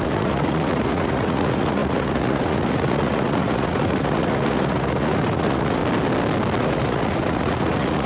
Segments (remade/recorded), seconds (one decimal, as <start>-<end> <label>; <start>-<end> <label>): 0.0-5.8 remade; 5.8-6.6 recorded; 6.6-8.1 remade